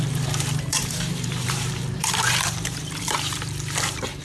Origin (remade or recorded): remade